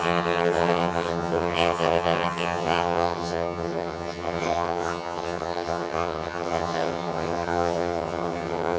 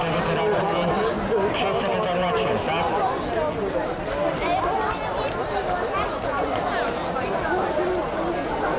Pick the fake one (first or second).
first